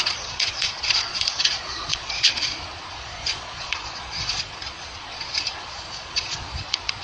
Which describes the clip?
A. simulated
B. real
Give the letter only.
A